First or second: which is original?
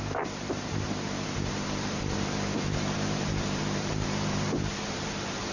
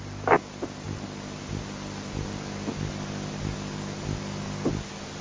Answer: second